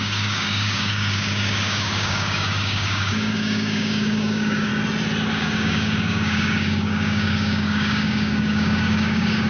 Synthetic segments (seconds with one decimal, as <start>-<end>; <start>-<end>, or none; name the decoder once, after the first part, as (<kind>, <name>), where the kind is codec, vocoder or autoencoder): 0.0-4.7 (codec, DAC); 5.3-9.5